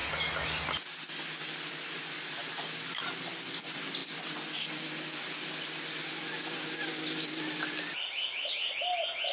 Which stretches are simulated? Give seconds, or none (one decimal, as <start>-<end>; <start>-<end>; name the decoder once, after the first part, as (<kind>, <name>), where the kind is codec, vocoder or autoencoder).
none